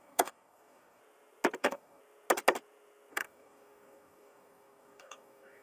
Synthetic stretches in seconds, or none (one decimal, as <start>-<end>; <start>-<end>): 0.0-1.0; 1.6-2.0; 3.1-5.6